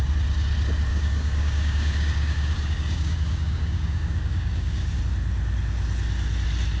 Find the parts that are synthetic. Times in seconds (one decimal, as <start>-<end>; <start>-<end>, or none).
0.9-5.0